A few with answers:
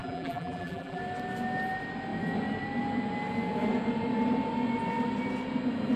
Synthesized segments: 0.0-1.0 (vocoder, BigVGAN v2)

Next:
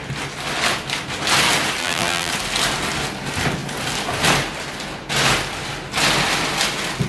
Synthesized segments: 1.8-2.3 (vocoder, BigVGAN v2)

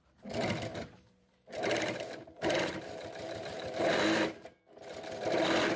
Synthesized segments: 0.7-3.9 (vocoder, BigVGAN v2)

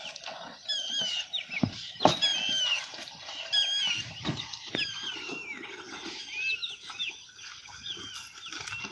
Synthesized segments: 0.0-2.3 (vocoder, BigVGAN v2); 4.7-5.5